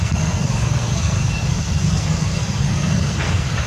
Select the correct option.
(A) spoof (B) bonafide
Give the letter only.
A